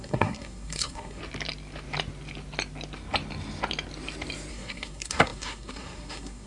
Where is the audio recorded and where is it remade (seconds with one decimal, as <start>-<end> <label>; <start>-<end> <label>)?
0.0-1.2 remade; 1.2-4.5 recorded; 4.5-6.5 remade